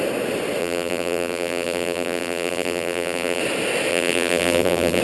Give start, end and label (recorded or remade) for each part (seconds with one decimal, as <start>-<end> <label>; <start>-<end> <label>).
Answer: 0.0-0.6 recorded; 0.6-3.4 remade; 3.4-3.9 recorded; 3.9-5.0 remade